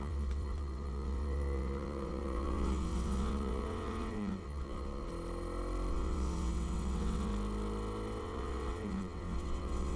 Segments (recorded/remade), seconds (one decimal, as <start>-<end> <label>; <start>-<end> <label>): 0.0-5.1 remade; 5.1-5.9 recorded; 5.9-7.3 remade; 7.3-8.2 recorded; 8.2-10.0 remade